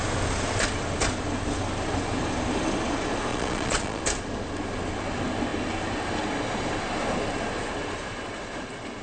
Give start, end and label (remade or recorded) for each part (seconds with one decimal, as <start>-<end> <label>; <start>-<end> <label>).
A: 0.0-3.3 recorded; 3.3-4.0 remade; 4.0-9.0 recorded